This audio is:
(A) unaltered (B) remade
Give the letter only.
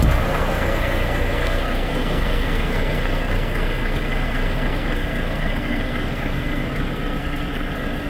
B